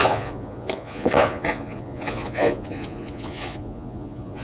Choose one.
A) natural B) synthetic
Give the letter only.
B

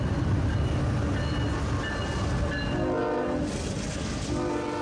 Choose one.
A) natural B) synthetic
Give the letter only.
A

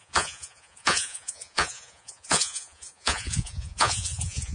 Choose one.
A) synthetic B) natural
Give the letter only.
A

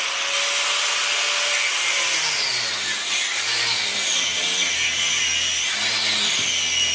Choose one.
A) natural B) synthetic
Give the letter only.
A